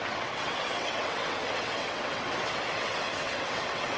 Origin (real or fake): fake